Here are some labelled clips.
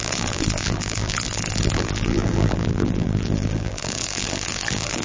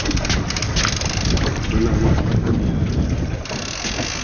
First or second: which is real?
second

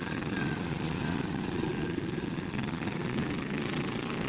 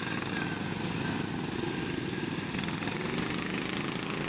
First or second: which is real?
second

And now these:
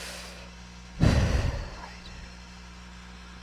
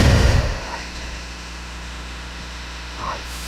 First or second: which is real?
first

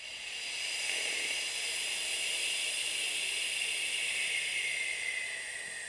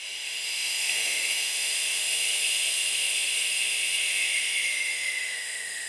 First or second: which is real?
first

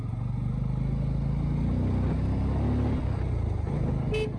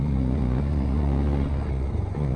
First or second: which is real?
first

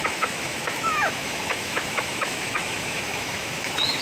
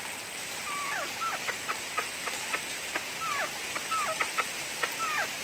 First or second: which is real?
second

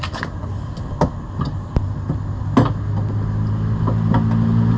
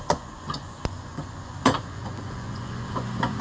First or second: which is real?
first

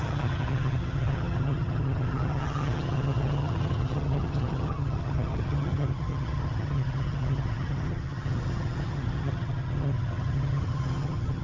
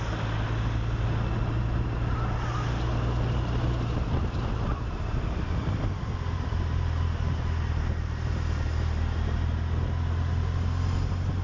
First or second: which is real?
second